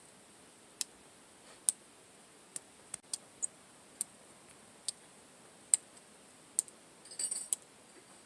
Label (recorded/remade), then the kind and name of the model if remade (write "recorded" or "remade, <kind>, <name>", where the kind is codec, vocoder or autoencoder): recorded